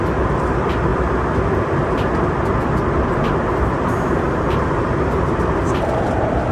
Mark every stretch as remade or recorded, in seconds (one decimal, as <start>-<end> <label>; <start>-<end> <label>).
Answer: 0.0-6.5 remade